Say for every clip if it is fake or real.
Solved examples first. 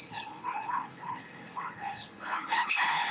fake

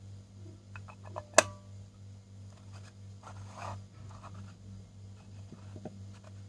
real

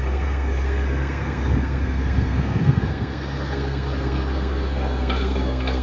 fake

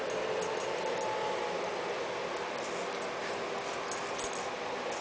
real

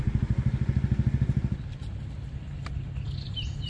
real